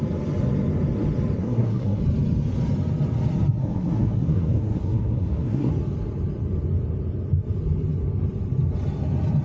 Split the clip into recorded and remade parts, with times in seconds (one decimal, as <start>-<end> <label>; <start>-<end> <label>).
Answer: 0.0-1.4 recorded; 1.4-2.0 remade; 2.0-3.6 recorded; 3.6-5.7 remade; 5.7-9.4 recorded